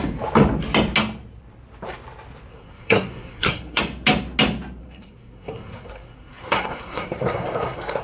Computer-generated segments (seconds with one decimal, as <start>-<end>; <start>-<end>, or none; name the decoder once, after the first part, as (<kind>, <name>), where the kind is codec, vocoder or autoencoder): 2.5-3.8 (codec, SNAC); 4.8-8.0